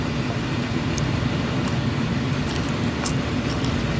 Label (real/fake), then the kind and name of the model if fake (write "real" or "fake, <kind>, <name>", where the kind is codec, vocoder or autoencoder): real